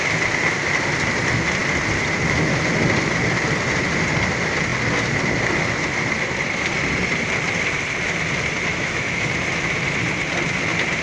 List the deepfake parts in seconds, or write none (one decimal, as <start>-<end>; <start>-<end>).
8.7-9.3